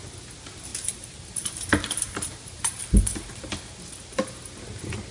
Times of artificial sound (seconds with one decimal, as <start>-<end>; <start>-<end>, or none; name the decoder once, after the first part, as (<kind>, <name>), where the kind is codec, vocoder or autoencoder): 0.7-3.8 (vocoder, BigVGAN v2)